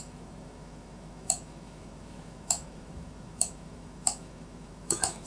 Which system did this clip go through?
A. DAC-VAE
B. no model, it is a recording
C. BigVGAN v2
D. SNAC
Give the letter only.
A